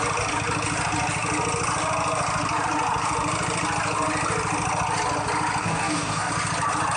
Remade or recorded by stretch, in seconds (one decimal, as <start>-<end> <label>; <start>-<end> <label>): 0.0-5.6 recorded; 5.6-6.3 remade; 6.3-7.0 recorded